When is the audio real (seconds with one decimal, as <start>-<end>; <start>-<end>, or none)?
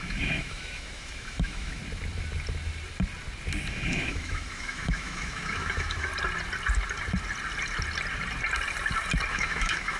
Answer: 1.8-3.7; 6.1-9.3